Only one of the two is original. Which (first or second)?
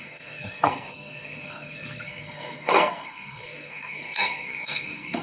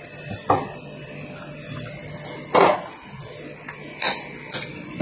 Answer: second